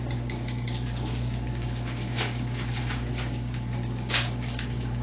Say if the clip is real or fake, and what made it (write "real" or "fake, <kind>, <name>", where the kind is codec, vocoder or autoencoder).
fake, codec, DAC